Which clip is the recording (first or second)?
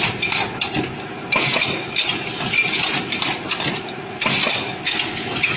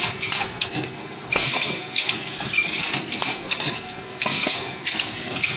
first